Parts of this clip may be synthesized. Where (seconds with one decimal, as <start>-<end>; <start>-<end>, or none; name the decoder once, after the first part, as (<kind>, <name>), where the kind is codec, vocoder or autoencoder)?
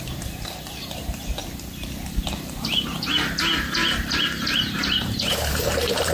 3.8-6.1 (vocoder, BigVGAN v2)